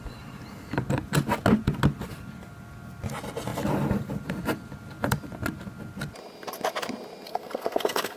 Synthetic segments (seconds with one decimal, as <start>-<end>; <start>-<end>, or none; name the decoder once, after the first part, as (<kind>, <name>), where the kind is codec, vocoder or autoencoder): 7.3-8.2 (codec, SNAC)